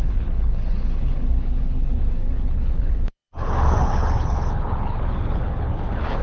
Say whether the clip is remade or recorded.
remade